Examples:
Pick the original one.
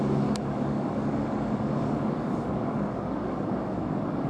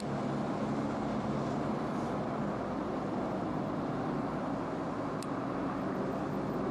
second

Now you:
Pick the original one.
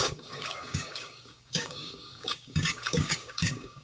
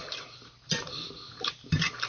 second